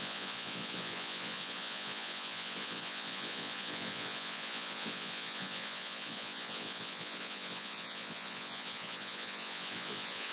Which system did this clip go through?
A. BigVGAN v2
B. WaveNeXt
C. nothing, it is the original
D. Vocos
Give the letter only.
D